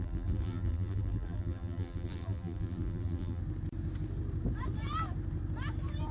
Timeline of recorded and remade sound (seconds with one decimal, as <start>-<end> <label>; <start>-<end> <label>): 0.0-3.4 remade; 3.4-6.1 recorded